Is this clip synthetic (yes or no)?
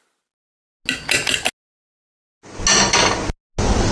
no